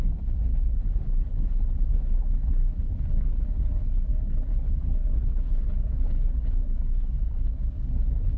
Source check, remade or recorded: remade